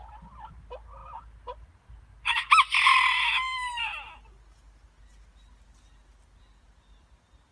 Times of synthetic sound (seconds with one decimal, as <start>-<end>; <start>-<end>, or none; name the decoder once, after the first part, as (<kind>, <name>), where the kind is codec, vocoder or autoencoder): none